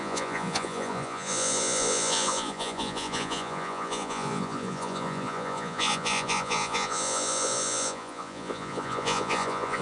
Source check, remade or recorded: remade